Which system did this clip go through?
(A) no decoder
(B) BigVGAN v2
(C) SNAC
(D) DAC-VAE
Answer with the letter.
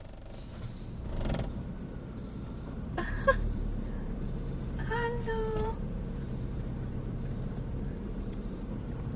B